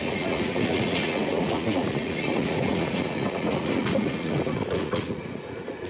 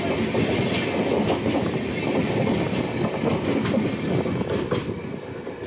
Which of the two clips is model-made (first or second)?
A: first